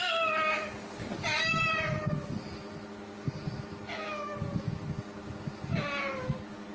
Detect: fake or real real